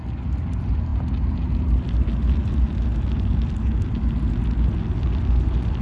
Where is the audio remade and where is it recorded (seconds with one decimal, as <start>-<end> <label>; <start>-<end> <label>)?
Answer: 0.0-5.8 recorded